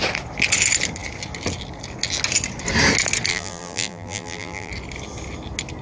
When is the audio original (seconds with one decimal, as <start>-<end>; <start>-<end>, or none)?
0.0-3.3; 4.7-5.8